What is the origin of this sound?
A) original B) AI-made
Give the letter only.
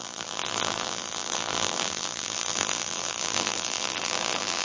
B